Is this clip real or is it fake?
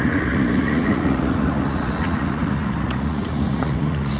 fake